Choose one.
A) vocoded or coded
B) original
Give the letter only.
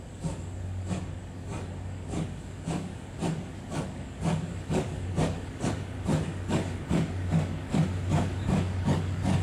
A